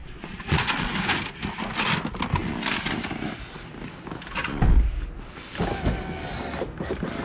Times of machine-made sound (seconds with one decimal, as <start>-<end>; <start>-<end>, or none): 0.0-0.9